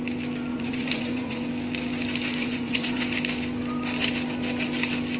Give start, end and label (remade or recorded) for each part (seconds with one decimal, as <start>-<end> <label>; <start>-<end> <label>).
0.0-0.5 recorded; 0.5-1.5 remade; 1.5-2.4 recorded; 2.4-3.0 remade; 3.0-5.2 recorded